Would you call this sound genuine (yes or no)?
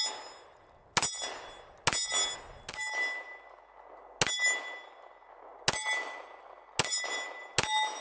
yes